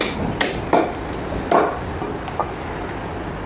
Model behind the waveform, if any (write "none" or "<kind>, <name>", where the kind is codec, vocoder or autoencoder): none